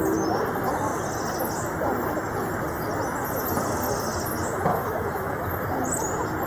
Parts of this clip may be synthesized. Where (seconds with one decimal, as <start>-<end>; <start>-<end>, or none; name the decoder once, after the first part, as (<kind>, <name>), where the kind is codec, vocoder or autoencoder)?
4.7-5.4 (autoencoder, DAC-VAE)